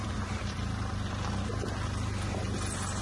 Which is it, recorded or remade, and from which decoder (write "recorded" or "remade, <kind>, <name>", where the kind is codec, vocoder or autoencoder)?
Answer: recorded